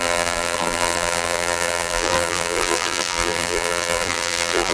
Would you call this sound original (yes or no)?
no